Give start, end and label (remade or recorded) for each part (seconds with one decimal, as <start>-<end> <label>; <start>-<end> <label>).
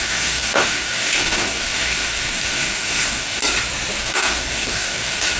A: 0.0-3.4 remade; 3.4-4.0 recorded; 4.0-5.4 remade